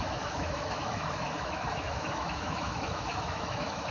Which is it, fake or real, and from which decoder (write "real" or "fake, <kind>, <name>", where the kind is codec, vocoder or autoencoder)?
fake, autoencoder, DAC-VAE